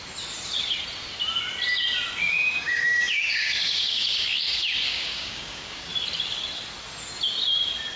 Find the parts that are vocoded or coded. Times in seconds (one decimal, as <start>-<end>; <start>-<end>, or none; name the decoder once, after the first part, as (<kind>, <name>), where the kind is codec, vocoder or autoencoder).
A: 2.2-5.9 (codec, DAC)